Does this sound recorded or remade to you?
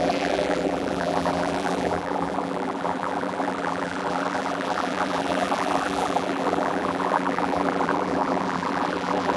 remade